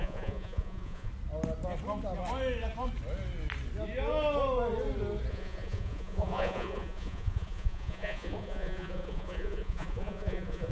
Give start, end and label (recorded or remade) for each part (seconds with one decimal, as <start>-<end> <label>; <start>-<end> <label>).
0.0-1.1 remade; 1.1-5.3 recorded; 5.3-10.7 remade